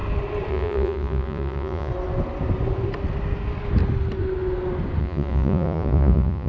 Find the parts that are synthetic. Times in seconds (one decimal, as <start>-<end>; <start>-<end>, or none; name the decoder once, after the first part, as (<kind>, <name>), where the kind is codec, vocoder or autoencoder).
0.5-1.9 (vocoder, Vocos); 5.0-6.5